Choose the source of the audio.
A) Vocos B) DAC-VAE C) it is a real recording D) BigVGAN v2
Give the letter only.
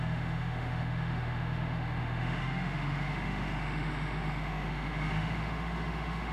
B